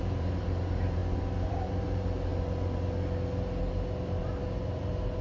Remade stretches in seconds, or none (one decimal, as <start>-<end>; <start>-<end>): 0.0-1.0; 1.5-2.3; 3.6-5.2